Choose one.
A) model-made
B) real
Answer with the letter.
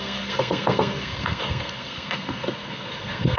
A